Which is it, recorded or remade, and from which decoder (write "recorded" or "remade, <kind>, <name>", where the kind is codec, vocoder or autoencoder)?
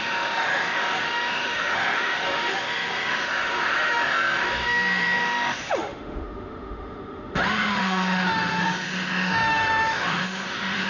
remade, autoencoder, DAC-VAE